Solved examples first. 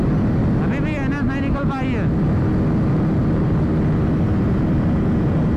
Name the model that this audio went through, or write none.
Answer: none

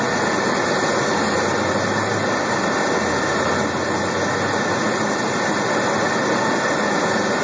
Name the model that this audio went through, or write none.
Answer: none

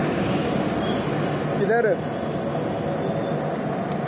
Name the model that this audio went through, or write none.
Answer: none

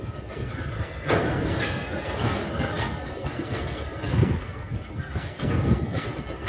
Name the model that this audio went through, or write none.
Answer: codec, SNAC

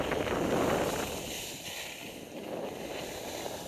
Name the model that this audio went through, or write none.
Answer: none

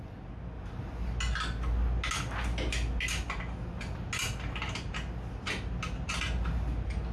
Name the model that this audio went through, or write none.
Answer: none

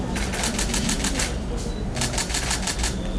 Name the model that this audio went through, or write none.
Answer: none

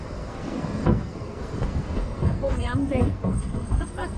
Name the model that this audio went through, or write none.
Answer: codec, SNAC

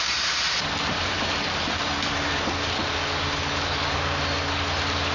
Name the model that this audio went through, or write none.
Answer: none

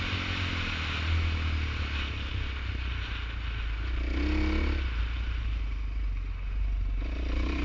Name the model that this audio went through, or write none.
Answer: none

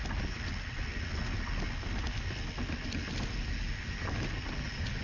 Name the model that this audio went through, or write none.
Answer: none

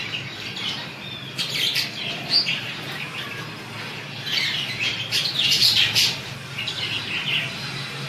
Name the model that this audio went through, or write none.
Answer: none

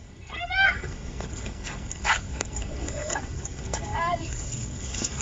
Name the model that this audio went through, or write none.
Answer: codec, SNAC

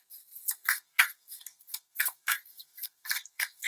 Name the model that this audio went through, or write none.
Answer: codec, SNAC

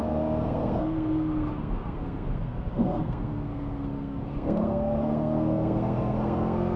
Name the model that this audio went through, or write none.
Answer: codec, SNAC